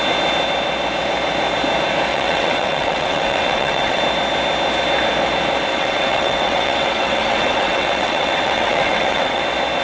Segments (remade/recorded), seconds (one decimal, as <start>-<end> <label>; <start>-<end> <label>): 0.0-2.1 recorded; 2.1-4.0 remade; 4.0-5.7 recorded; 5.7-9.4 remade; 9.4-9.8 recorded